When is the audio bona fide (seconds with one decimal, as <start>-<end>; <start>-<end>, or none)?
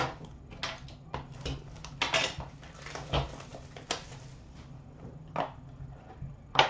0.0-6.7